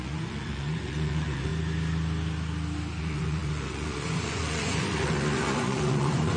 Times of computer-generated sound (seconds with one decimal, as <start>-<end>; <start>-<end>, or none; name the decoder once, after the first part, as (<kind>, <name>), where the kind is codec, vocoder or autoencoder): 0.0-1.5 (vocoder, Vocos); 3.0-6.4